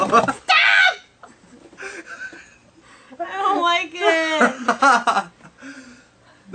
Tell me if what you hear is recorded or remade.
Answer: recorded